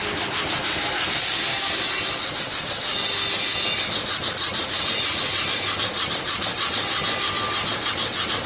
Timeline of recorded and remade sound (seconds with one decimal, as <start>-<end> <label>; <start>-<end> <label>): 0.0-4.5 recorded; 4.5-5.3 remade; 5.3-8.5 recorded